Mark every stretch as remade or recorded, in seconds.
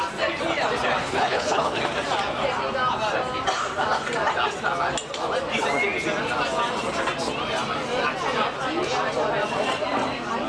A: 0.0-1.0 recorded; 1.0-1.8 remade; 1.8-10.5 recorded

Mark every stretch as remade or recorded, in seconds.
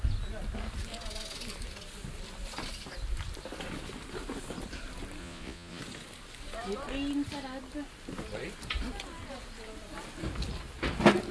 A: 0.0-5.2 recorded; 5.2-5.8 remade; 5.8-11.3 recorded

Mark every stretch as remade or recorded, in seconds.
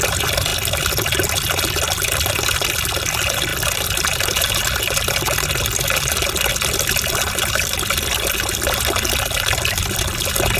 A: 0.0-10.6 recorded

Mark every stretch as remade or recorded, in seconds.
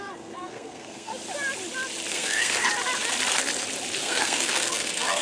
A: 0.0-1.1 remade; 1.1-2.1 recorded; 2.1-2.7 remade; 2.7-4.0 recorded; 4.0-5.2 remade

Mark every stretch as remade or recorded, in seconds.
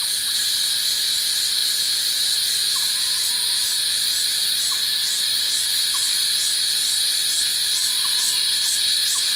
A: 0.0-9.4 recorded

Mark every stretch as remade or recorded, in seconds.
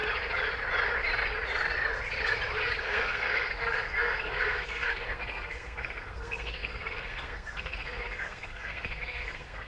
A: 0.0-2.8 recorded; 2.8-9.7 remade